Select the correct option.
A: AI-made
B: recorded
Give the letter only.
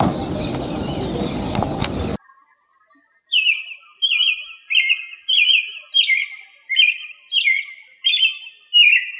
B